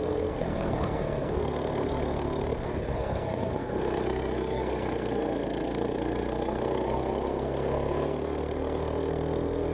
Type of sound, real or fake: fake